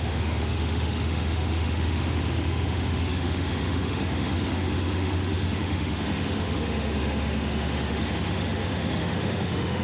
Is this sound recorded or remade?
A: remade